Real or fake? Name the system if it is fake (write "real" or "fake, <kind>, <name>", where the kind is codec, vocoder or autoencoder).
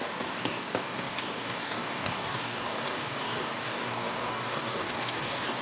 fake, codec, DAC